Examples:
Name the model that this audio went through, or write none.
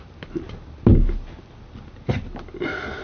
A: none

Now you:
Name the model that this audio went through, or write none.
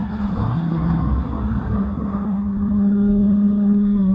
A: codec, SNAC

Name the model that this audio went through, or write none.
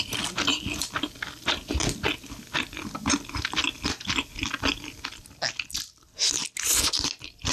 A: none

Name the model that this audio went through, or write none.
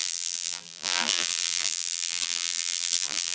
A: vocoder, BigVGAN v2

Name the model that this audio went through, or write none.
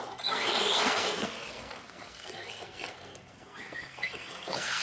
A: codec, SNAC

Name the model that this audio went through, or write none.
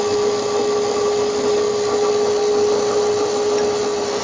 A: none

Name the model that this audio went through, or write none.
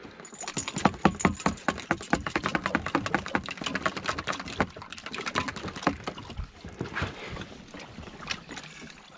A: none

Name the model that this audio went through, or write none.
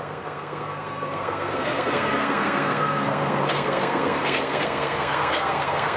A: codec, SNAC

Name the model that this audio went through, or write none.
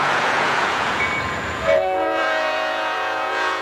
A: vocoder, Vocos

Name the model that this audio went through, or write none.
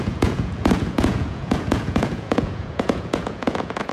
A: vocoder, Vocos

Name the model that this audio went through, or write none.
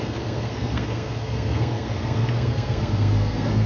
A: codec, SNAC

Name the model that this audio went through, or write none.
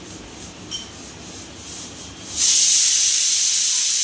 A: none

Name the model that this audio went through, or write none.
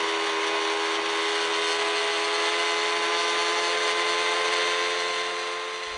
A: none